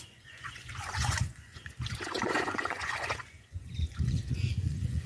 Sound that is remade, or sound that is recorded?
remade